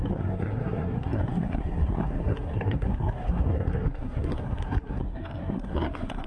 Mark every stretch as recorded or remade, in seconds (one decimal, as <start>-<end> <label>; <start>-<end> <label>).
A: 0.0-6.3 remade